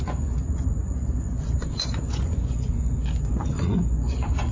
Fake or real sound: fake